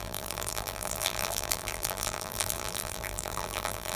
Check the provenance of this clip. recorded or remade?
remade